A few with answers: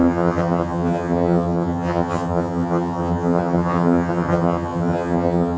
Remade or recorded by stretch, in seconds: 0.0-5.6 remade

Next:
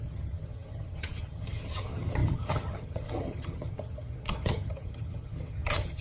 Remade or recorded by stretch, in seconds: 0.0-6.0 remade

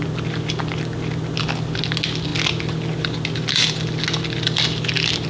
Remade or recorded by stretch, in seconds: 0.0-5.3 recorded

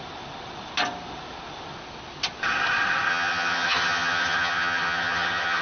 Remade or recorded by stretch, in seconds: 0.0-3.1 recorded; 3.1-5.6 remade

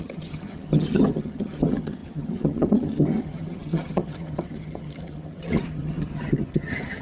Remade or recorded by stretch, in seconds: 0.0-7.0 remade

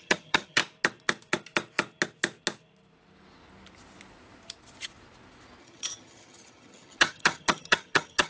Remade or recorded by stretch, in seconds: 0.0-0.6 remade; 0.6-5.6 recorded; 5.6-8.3 remade

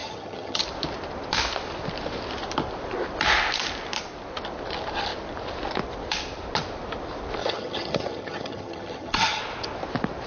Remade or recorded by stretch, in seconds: 0.0-0.6 remade; 0.6-7.4 recorded; 7.4-9.4 remade; 9.4-10.3 recorded

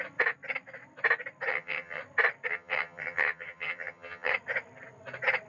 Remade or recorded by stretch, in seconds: 0.0-1.5 recorded; 1.5-2.0 remade; 2.0-2.5 recorded; 2.5-4.3 remade; 4.3-5.5 recorded